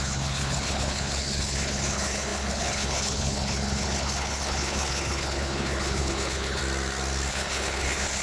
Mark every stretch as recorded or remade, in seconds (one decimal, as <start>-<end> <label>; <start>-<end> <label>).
0.0-6.6 remade; 6.6-7.3 recorded; 7.3-8.2 remade